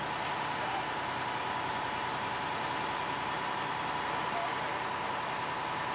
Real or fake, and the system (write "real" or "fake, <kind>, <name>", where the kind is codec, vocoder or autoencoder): real